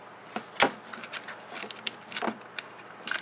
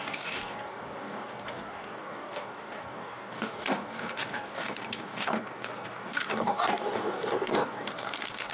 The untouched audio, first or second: first